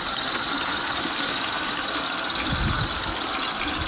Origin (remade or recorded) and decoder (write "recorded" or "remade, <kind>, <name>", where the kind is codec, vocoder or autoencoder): recorded